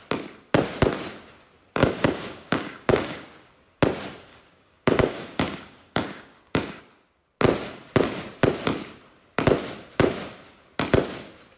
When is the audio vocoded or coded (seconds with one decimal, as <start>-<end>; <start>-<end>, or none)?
1.8-3.5; 4.3-6.8